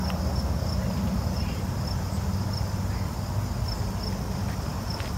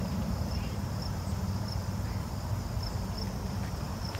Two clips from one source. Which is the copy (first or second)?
second